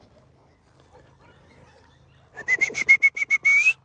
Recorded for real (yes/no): yes